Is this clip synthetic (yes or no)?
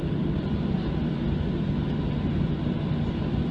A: no